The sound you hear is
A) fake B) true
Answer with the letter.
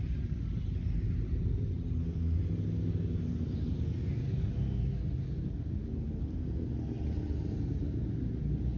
B